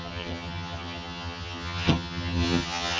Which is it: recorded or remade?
remade